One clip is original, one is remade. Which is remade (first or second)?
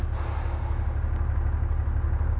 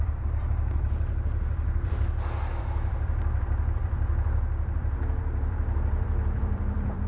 second